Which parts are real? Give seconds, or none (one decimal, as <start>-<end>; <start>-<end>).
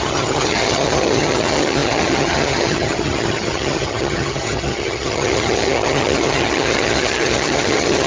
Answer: none